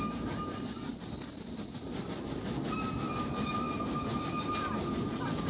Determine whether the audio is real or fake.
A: real